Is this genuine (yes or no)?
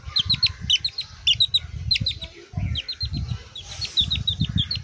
yes